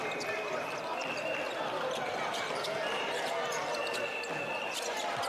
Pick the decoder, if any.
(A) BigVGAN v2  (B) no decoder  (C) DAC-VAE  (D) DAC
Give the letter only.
A